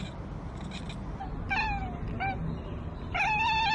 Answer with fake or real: real